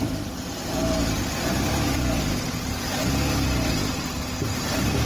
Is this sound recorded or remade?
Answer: remade